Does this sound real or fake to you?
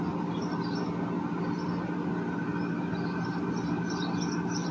real